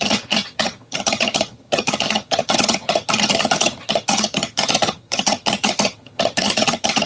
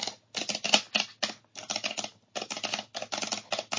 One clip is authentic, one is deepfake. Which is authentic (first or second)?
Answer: second